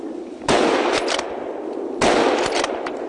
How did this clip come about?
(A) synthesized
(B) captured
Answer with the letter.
B